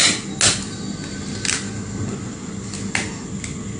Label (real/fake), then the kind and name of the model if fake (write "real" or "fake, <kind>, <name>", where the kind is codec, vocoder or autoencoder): real